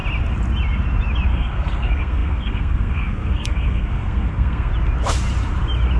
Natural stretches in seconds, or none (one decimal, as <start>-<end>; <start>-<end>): 0.0-1.3; 4.7-6.0